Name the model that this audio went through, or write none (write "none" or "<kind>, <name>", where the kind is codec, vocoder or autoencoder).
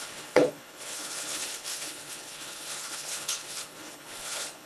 codec, HILCodec